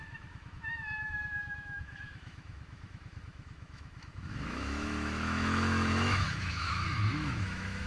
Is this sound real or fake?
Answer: fake